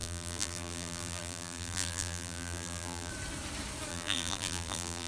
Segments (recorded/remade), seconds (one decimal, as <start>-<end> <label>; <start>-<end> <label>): 0.0-3.1 remade; 3.1-3.9 recorded; 3.9-5.1 remade